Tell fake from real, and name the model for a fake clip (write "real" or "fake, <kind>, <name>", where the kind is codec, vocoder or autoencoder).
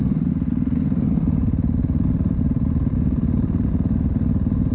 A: real